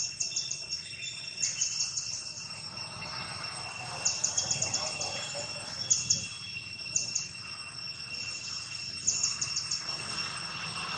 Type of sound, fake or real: real